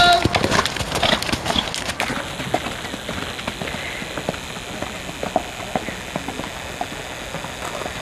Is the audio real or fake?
real